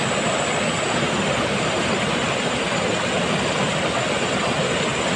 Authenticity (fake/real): real